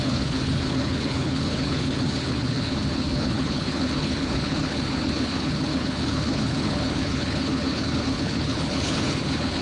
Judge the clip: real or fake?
fake